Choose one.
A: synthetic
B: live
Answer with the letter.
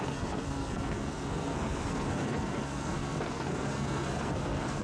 A